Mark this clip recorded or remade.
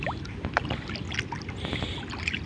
recorded